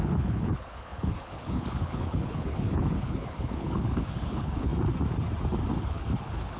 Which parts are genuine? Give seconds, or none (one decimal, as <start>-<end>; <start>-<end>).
4.7-5.8